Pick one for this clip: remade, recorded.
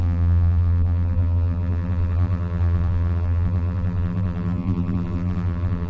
remade